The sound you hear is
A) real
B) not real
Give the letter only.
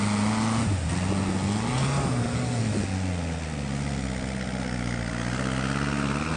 A